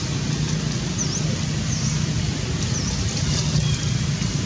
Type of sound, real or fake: real